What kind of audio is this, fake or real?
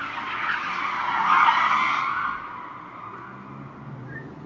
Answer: real